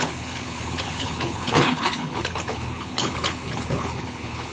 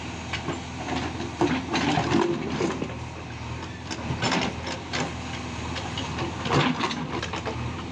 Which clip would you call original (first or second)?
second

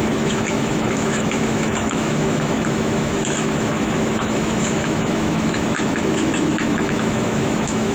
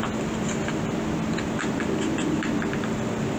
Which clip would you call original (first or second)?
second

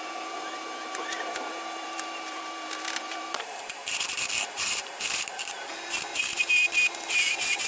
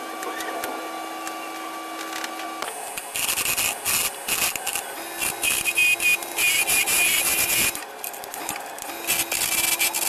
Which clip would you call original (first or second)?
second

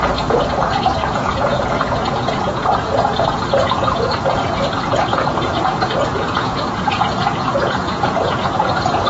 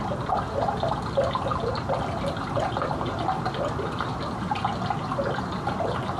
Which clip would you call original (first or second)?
second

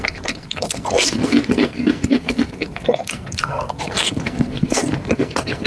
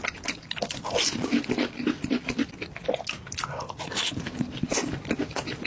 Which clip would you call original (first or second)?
second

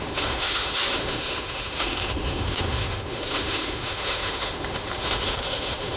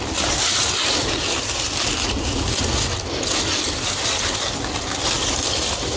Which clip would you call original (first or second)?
second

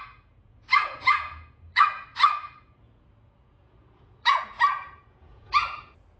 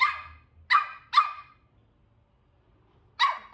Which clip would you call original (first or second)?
second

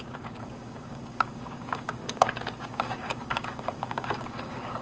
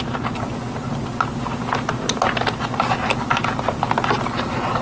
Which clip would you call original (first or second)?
second